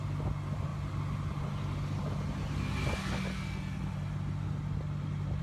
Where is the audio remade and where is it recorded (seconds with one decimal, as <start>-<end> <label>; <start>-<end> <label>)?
0.0-5.4 recorded